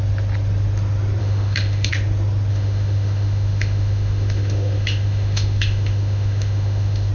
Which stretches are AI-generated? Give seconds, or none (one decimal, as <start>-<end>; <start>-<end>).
1.2-1.9; 2.5-7.1